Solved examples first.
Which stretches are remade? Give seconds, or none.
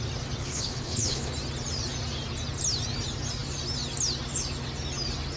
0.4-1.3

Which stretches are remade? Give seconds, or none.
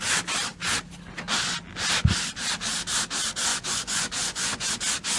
3.5-4.7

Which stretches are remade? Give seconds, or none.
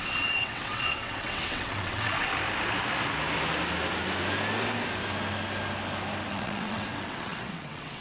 0.0-2.3; 6.3-8.0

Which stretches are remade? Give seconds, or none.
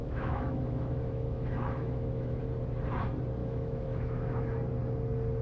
0.0-2.4; 3.4-4.4